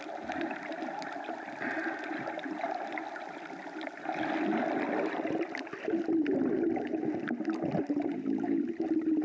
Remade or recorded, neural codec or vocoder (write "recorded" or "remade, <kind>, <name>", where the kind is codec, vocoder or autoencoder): recorded